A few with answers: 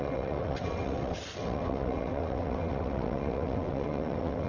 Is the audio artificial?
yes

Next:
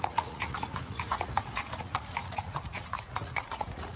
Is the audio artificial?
yes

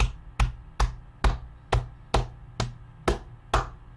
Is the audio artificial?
no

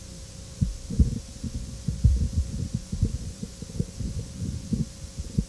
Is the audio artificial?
yes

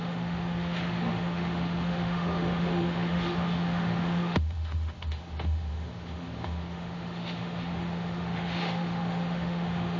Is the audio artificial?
yes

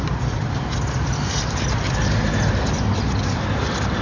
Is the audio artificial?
no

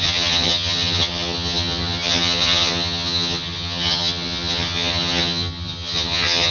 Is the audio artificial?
yes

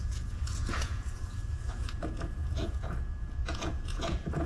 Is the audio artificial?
yes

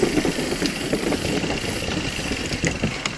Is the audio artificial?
no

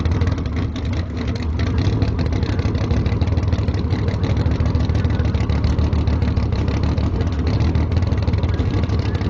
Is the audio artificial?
no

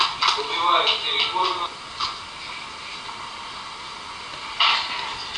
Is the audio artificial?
no